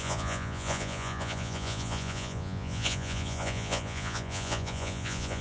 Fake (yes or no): yes